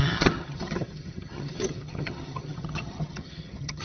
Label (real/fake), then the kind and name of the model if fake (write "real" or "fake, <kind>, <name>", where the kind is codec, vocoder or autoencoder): fake, vocoder, HiFi-GAN